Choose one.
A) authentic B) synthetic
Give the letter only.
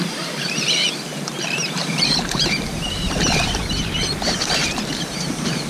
B